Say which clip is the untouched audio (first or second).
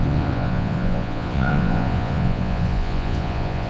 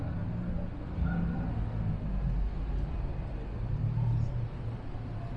second